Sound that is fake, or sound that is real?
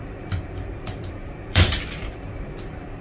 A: fake